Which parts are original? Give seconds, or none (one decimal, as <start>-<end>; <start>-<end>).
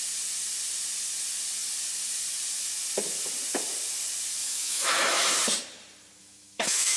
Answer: 0.0-4.4; 5.3-6.2